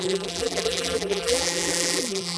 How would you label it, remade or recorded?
remade